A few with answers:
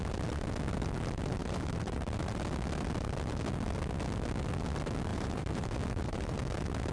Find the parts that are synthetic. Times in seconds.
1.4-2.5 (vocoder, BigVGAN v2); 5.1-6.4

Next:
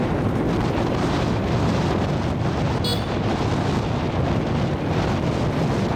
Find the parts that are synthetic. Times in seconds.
0.0-1.7 (vocoder, BigVGAN v2)